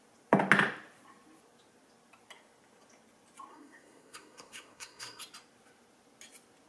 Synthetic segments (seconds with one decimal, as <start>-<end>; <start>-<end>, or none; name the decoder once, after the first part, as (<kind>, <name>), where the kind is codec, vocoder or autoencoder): 3.5-5.2 (codec, SNAC)